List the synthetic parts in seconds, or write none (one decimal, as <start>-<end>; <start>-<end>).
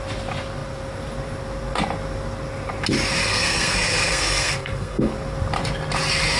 3.2-5.1